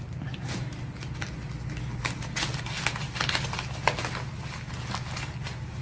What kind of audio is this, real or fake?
real